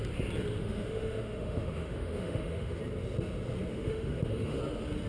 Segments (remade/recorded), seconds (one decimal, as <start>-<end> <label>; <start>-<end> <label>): 0.0-0.6 recorded; 0.6-2.8 remade; 2.8-3.7 recorded; 3.7-4.6 remade; 4.6-5.1 recorded